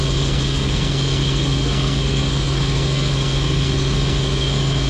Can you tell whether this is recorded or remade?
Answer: remade